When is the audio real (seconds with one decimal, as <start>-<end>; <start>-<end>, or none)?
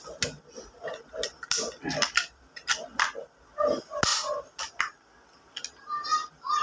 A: 0.0-4.1; 4.6-6.6